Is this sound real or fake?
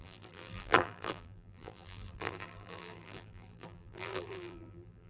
fake